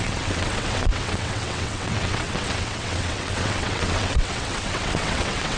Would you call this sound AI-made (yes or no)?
yes